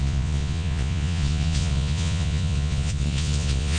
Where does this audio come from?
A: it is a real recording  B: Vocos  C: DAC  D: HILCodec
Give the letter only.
B